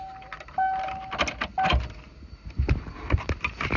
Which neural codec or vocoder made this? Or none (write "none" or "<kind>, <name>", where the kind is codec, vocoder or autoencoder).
none